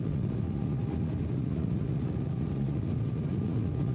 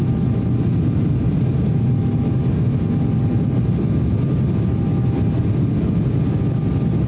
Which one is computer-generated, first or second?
first